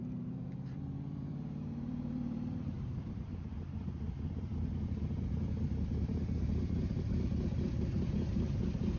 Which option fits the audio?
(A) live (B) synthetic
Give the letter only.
B